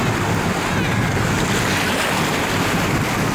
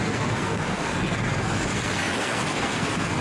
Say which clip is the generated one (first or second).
second